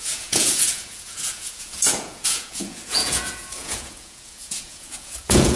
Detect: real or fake fake